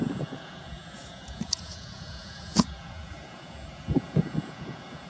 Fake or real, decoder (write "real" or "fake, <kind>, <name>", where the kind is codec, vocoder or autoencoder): fake, vocoder, Vocos